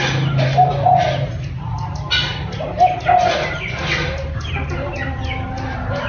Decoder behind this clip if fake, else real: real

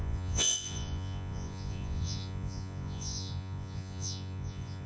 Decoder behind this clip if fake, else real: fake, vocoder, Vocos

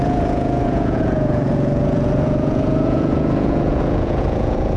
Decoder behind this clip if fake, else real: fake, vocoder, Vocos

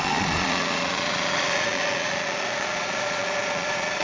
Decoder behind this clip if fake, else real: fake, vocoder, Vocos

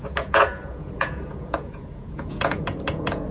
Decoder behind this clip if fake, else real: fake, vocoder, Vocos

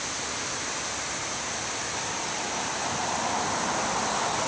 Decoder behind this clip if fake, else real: real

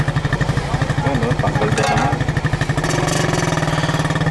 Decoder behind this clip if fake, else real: real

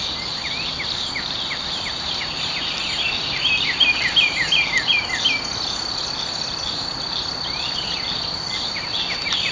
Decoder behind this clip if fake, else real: real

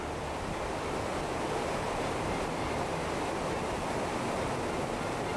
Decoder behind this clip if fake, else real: real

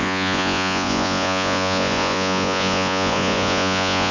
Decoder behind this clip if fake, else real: fake, vocoder, Vocos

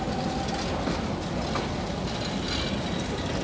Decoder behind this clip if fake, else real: real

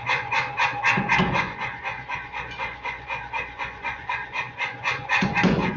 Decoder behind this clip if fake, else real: fake, vocoder, Vocos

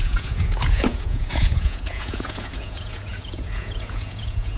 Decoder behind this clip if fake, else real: fake, vocoder, Vocos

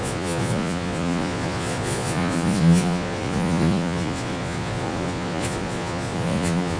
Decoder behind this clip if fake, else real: fake, vocoder, Vocos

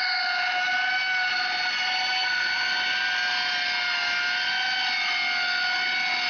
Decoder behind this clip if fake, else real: real